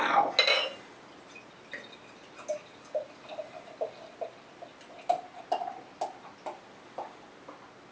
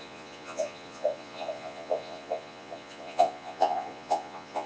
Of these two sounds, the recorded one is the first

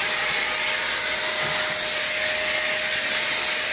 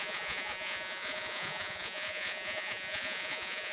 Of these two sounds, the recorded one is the first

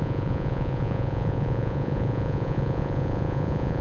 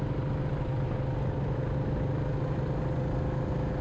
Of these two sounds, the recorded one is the second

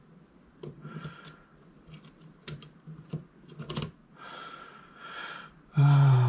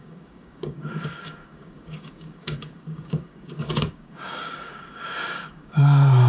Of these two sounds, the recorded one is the first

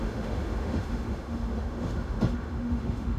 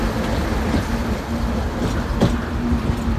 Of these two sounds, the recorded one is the second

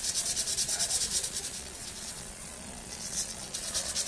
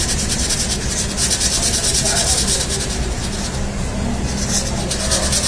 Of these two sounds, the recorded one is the second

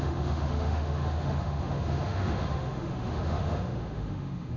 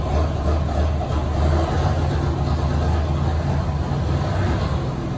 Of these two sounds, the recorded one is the second